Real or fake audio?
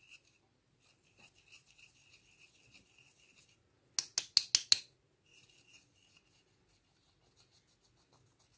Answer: real